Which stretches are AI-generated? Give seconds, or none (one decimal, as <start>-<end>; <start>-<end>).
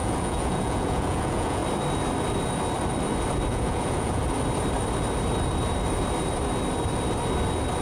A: 0.0-1.6; 3.5-4.2